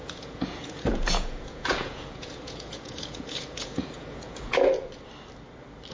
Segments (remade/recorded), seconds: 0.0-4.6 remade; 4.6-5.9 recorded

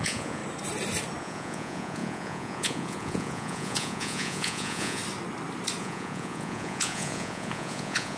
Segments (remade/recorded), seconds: 0.0-0.4 remade; 0.4-1.2 recorded; 1.2-5.0 remade; 5.0-5.8 recorded; 5.8-8.2 remade